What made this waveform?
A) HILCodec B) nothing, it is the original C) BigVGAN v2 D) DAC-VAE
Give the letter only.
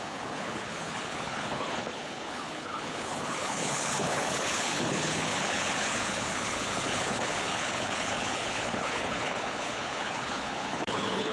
A